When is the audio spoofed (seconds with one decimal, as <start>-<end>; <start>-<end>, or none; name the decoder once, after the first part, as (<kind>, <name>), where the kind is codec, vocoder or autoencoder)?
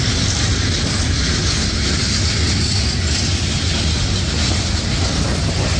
none